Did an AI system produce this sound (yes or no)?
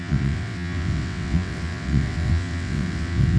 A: yes